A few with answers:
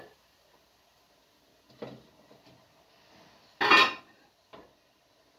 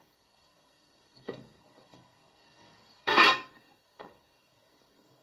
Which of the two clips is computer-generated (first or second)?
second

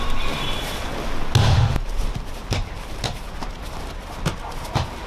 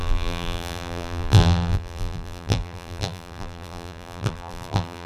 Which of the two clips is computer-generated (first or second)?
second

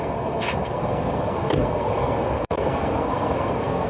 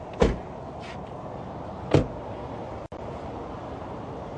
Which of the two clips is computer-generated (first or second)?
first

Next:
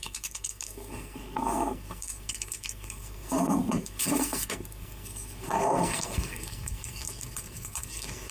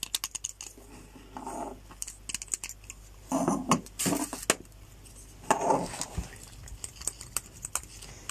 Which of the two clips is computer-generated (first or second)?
first